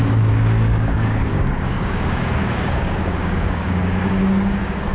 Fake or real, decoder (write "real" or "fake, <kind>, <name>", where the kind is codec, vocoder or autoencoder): fake, codec, DAC